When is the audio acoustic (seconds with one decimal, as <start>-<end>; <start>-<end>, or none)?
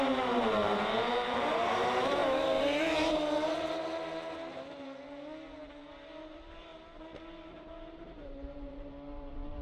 3.8-5.7; 6.7-7.5